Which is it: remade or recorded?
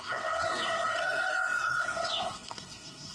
remade